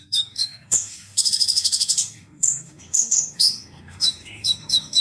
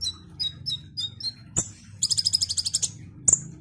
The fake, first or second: first